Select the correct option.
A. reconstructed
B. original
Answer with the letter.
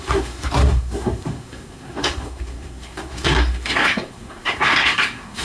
A